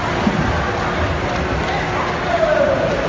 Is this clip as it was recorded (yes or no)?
yes